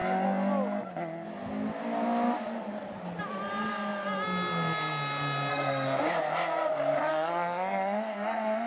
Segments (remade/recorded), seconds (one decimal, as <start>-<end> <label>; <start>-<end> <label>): 0.0-5.5 recorded; 5.5-6.1 remade; 6.1-7.1 recorded; 7.1-8.7 remade